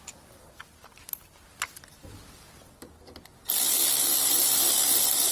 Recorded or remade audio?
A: recorded